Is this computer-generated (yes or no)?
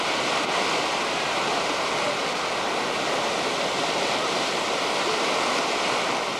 no